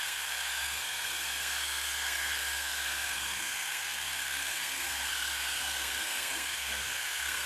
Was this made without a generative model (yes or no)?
no